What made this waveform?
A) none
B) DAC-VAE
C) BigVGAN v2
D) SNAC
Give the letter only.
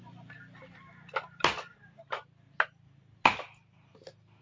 A